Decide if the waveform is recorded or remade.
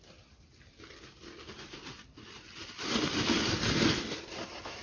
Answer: recorded